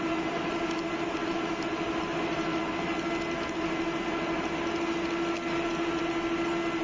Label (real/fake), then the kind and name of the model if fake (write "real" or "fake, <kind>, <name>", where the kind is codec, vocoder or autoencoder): real